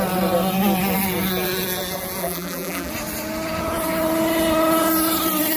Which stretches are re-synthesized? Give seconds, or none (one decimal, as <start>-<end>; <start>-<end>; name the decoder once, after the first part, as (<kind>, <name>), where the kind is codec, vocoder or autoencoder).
2.2-2.9 (vocoder, BigVGAN v2)